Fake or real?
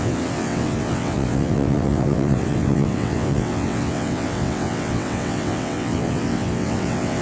fake